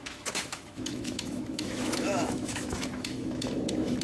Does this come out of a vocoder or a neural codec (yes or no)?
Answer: yes